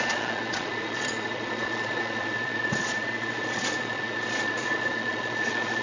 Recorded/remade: remade